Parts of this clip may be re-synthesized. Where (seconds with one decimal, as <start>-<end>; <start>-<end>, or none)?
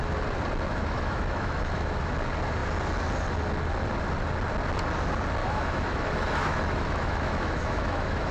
0.7-2.0; 5.4-8.3